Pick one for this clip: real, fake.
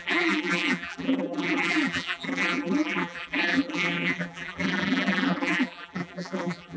fake